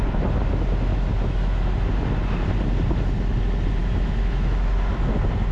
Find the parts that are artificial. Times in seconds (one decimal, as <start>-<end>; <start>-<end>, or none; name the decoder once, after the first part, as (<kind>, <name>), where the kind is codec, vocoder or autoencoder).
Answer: 0.9-1.7 (autoencoder, DAC-VAE); 3.8-4.9